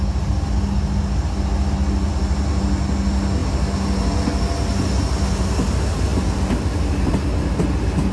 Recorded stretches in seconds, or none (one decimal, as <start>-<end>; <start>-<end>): 0.0-8.1